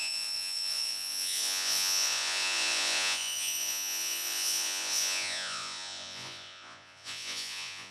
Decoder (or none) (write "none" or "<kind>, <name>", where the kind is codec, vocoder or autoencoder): vocoder, Vocos